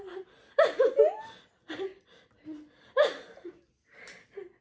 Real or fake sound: real